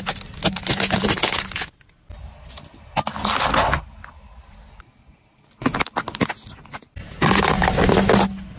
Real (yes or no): yes